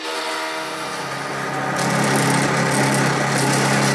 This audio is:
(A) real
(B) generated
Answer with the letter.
A